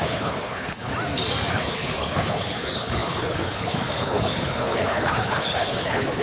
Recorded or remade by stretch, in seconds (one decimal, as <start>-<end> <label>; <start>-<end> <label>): 0.0-0.9 remade; 0.9-1.5 recorded; 1.5-6.2 remade